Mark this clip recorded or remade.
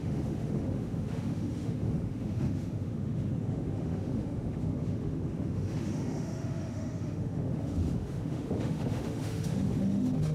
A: remade